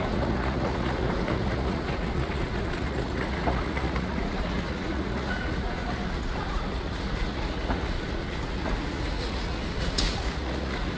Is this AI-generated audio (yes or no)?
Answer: yes